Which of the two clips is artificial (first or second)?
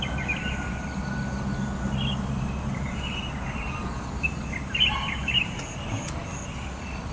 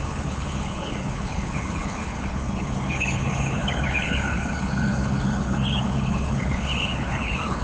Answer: second